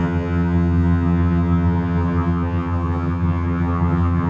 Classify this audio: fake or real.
fake